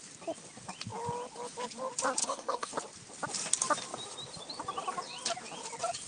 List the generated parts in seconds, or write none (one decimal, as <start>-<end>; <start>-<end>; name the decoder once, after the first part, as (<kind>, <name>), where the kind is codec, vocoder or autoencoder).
2.2-2.7 (codec, SNAC)